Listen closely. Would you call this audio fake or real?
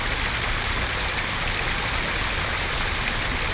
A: real